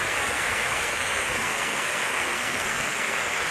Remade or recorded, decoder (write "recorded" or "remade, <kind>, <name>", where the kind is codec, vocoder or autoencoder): remade, codec, SNAC